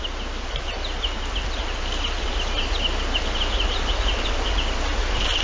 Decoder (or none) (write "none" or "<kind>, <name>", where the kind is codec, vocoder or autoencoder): none